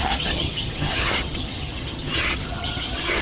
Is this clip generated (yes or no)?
yes